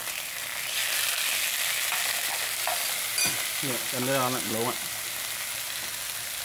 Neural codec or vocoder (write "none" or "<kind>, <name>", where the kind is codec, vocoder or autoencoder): none